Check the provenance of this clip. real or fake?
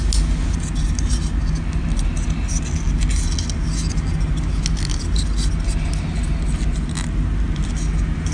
real